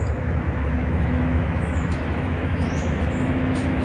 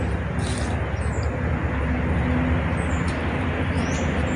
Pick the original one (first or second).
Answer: second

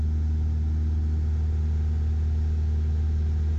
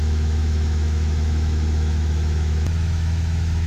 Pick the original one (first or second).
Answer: first